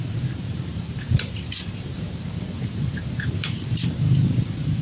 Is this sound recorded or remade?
remade